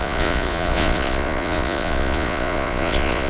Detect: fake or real fake